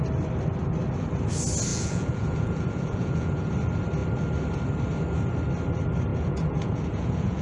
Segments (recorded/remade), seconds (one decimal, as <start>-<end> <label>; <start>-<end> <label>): 0.0-1.7 recorded; 1.7-3.5 remade; 3.5-6.1 recorded; 6.1-7.4 remade